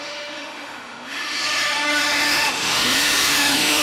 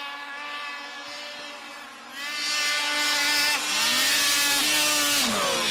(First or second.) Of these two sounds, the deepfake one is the first